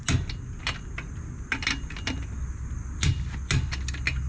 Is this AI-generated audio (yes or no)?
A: no